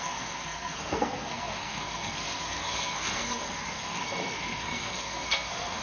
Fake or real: fake